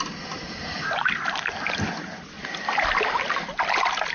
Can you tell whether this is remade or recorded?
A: recorded